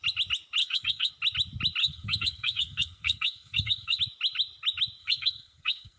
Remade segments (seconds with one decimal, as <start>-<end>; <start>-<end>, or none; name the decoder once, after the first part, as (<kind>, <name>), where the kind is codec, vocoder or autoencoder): 0.6-1.1 (codec, SNAC); 1.8-4.0; 5.0-6.0